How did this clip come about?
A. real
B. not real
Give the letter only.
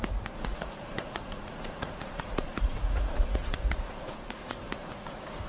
B